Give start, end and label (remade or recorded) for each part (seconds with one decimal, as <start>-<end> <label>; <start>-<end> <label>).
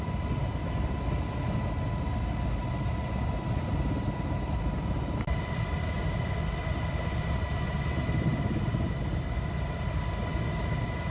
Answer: 0.0-11.1 recorded